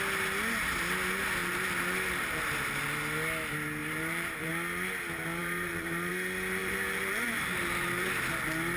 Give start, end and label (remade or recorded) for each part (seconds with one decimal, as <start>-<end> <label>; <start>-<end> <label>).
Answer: 0.0-1.4 recorded; 1.4-2.6 remade; 2.6-3.8 recorded; 3.8-4.5 remade; 4.5-5.4 recorded; 5.4-6.1 remade; 6.1-6.6 recorded; 6.6-8.3 remade; 8.3-8.8 recorded